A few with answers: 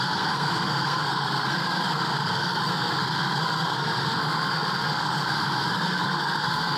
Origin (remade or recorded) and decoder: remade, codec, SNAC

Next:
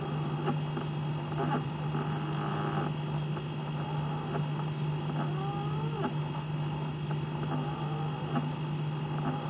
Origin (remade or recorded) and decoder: recorded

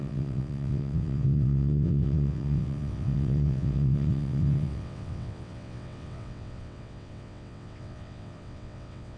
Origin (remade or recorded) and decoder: remade, vocoder, WaveNeXt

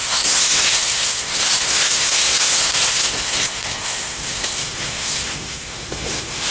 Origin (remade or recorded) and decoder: remade, codec, SNAC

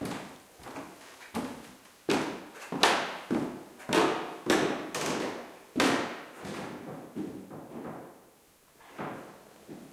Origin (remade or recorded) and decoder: recorded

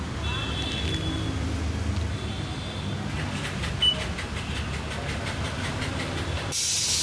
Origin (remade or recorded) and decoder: recorded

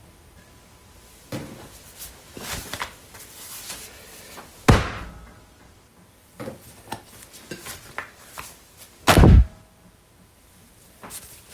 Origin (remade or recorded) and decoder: recorded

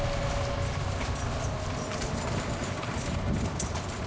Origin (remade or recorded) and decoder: recorded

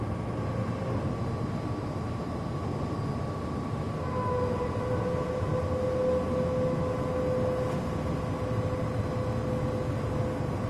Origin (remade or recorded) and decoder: recorded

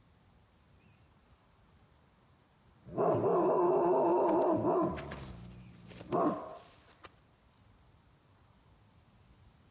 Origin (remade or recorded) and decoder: recorded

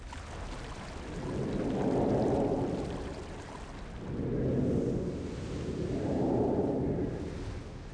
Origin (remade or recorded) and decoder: recorded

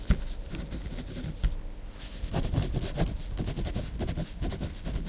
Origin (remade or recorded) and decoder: recorded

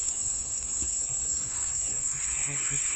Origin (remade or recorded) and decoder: remade, codec, SNAC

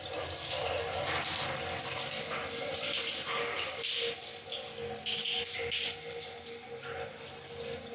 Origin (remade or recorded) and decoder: recorded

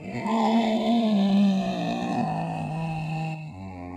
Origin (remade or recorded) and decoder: recorded